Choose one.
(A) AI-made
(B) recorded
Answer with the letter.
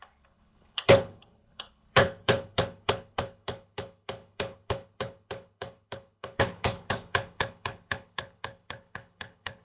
A